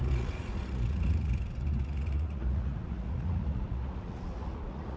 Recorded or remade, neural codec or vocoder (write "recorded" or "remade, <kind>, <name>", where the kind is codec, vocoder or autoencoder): remade, vocoder, Vocos